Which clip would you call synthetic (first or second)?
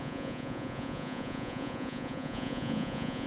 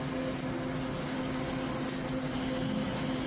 first